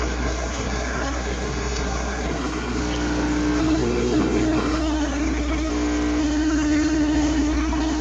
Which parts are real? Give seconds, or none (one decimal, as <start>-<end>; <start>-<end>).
2.8-3.6; 5.7-6.2